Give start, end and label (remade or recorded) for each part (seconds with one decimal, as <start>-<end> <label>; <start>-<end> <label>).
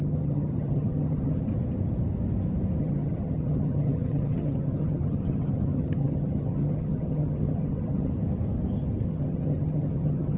0.0-1.5 remade; 1.5-2.8 recorded; 2.8-8.1 remade; 8.1-9.1 recorded; 9.1-10.4 remade